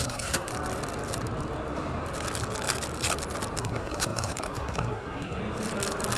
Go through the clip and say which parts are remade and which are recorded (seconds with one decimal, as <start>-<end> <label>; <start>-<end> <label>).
0.0-0.5 remade; 0.5-3.6 recorded; 3.6-5.4 remade; 5.4-6.2 recorded